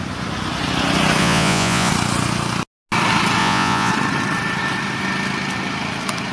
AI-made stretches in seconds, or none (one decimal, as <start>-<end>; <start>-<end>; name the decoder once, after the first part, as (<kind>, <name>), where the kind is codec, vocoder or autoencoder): 1.2-1.9 (vocoder, Vocos); 3.4-3.9